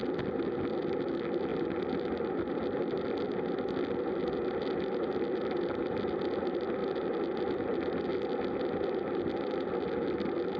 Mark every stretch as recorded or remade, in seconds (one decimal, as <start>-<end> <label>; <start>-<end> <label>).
0.0-10.6 recorded